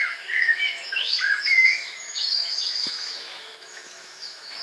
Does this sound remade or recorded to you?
remade